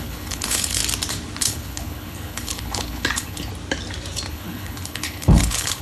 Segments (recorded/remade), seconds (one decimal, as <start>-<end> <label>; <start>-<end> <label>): 0.0-0.8 remade; 0.8-1.4 recorded; 1.4-3.5 remade; 3.5-4.3 recorded; 4.3-5.8 remade